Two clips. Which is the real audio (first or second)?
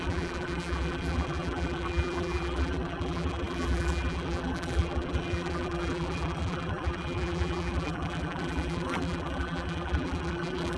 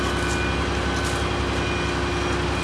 second